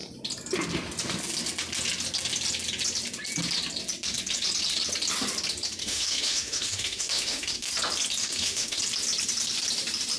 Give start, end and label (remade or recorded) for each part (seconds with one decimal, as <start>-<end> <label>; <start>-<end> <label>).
0.0-5.8 recorded; 5.8-7.7 remade; 7.7-8.2 recorded; 8.2-8.8 remade; 8.8-10.2 recorded